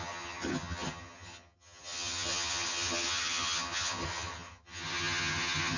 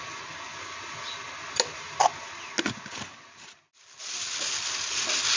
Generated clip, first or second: first